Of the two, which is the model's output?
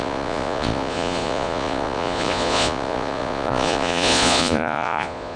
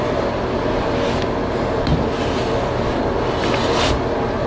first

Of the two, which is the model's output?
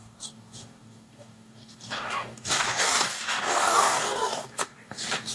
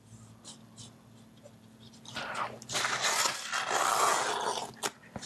first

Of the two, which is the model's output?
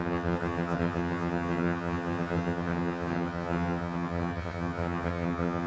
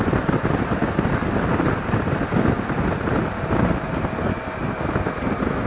first